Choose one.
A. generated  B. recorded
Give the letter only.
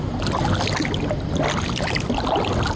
B